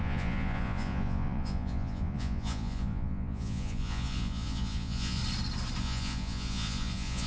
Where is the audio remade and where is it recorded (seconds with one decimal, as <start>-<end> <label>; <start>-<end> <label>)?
0.0-5.2 remade; 5.2-5.8 recorded; 5.8-7.3 remade